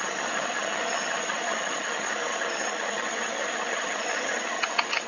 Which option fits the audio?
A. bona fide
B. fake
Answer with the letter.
B